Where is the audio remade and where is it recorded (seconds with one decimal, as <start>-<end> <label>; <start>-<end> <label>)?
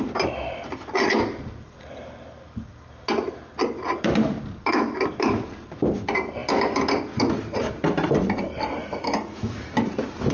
0.0-8.8 recorded; 8.8-9.7 remade; 9.7-10.3 recorded